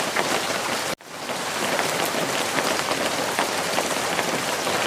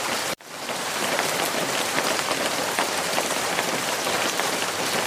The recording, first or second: first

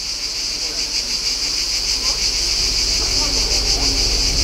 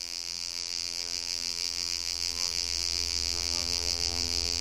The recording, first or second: first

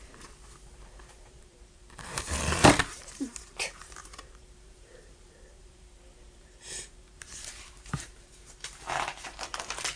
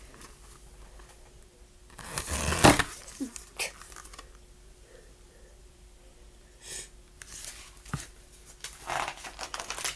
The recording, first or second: second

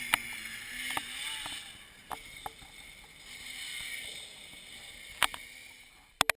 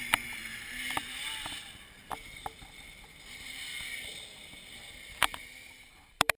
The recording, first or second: first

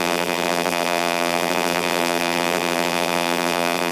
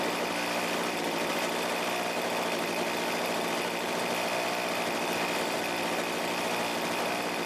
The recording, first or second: second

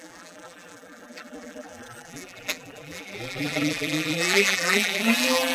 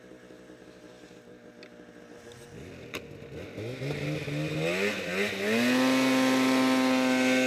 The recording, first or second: second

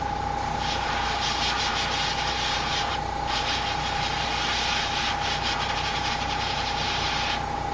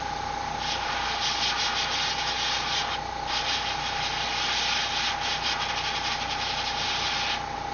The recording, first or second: second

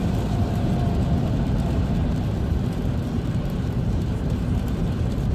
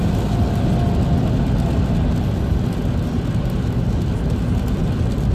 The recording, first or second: second